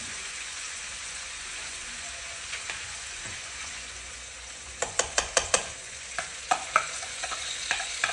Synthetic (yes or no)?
yes